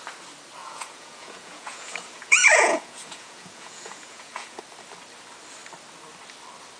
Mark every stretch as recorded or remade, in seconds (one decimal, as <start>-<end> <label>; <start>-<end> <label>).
0.0-0.6 recorded; 0.6-4.6 remade; 4.6-6.8 recorded